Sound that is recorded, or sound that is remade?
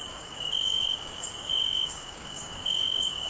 remade